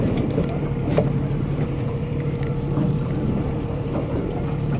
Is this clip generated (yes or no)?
yes